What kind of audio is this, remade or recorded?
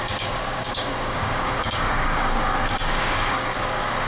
remade